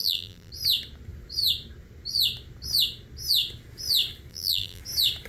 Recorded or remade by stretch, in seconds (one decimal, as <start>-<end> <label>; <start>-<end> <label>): 0.0-0.5 remade; 0.5-4.3 recorded; 4.3-4.8 remade; 4.8-5.3 recorded